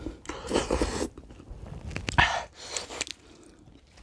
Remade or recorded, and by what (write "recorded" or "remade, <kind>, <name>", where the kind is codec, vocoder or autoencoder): recorded